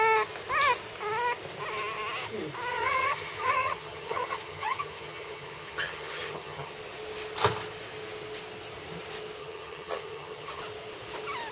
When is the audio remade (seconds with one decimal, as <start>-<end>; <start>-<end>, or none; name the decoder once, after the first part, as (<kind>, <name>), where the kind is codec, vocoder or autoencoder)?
2.7-6.7 (vocoder, HiFi-GAN); 9.4-10.6